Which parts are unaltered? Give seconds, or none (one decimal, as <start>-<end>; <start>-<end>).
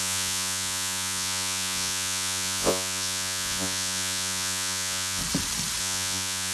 5.2-5.8